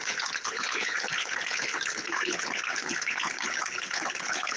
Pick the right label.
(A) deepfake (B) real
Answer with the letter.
A